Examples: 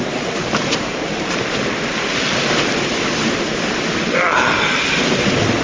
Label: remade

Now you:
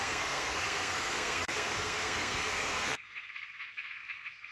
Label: remade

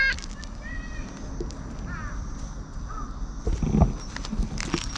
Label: recorded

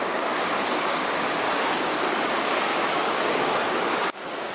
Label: remade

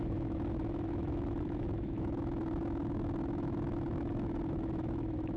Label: remade